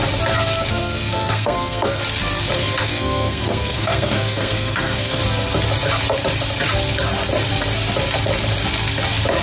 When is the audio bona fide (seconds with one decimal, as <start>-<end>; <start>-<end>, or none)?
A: 0.0-0.8; 2.0-2.6; 5.2-9.4